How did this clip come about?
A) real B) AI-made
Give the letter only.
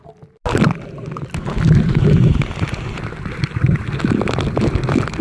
A